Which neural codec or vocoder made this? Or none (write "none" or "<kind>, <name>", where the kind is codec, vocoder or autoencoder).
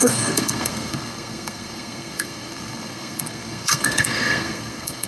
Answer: codec, SNAC